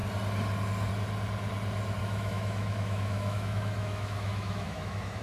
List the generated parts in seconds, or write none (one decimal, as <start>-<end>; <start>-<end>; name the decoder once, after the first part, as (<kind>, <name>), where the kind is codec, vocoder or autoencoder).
2.0-5.2 (autoencoder, DAC-VAE)